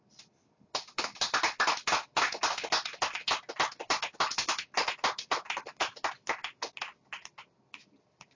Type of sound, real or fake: real